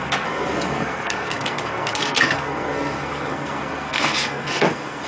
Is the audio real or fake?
fake